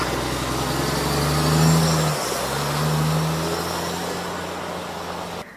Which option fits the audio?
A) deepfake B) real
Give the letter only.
B